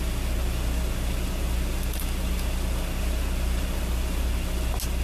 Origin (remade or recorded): recorded